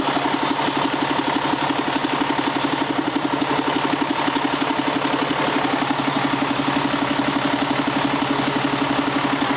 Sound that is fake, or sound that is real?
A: real